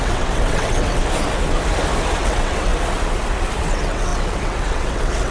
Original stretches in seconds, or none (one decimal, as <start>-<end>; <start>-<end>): 1.0-2.2; 2.7-3.6